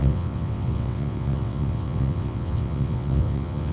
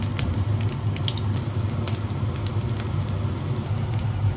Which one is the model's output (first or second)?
first